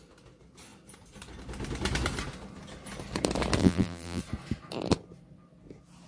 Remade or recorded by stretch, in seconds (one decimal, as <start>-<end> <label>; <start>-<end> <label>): 0.0-3.6 recorded; 3.6-4.2 remade; 4.2-6.1 recorded